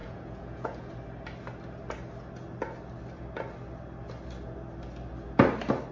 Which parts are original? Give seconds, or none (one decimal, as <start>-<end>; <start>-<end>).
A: 0.9-5.9

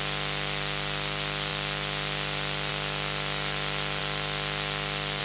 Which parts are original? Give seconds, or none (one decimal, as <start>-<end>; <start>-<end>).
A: 0.0-5.2

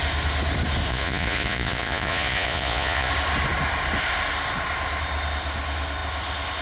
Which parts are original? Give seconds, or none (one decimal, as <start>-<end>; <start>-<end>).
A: 0.0-0.9; 3.1-6.6

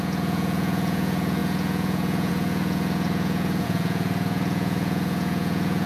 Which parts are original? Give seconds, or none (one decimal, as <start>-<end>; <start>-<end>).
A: none

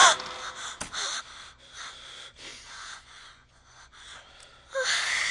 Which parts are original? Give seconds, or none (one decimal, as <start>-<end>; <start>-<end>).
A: 0.0-2.5; 4.2-5.3

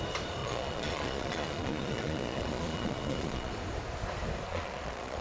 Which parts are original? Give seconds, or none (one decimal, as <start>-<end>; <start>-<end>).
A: 0.0-0.4; 3.5-4.5

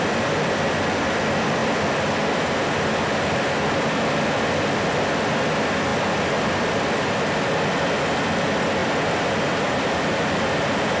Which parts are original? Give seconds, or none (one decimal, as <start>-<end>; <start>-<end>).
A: 0.0-11.0

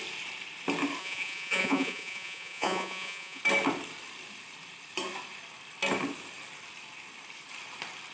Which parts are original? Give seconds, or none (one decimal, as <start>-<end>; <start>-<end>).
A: 0.0-1.0; 3.4-8.1